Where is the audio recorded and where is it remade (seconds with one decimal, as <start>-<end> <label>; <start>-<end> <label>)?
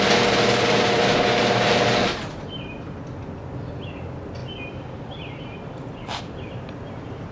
0.0-2.0 recorded; 2.0-3.0 remade; 3.0-7.3 recorded